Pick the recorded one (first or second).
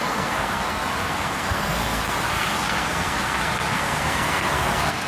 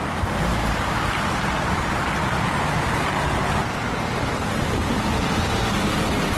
second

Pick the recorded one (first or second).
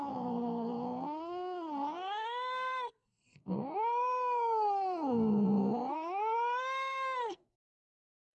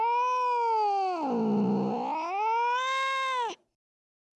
second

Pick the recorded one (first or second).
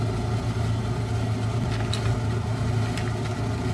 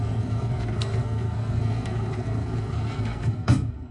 first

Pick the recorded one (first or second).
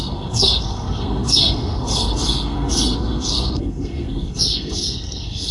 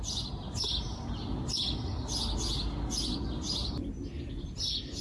second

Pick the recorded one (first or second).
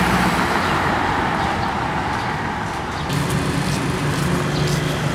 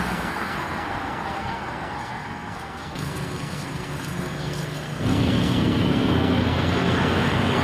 first